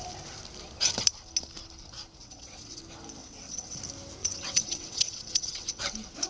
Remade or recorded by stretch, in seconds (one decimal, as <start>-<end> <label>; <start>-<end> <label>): 0.0-2.2 recorded; 2.2-2.8 remade; 2.8-3.2 recorded; 3.2-3.8 remade; 3.8-4.2 recorded; 4.2-5.8 remade; 5.8-6.3 recorded